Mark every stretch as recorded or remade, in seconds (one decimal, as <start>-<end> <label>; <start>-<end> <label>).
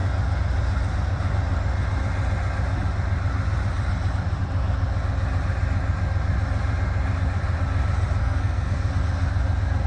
0.0-8.2 recorded; 8.2-8.9 remade; 8.9-9.9 recorded